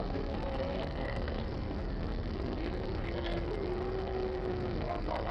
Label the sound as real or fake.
fake